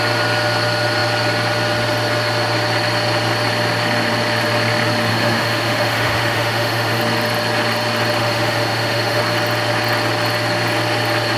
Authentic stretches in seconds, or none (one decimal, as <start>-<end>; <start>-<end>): 0.0-5.1; 7.0-8.2; 9.2-11.4

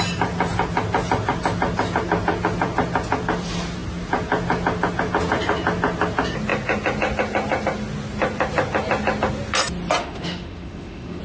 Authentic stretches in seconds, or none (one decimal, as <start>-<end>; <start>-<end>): 0.0-10.0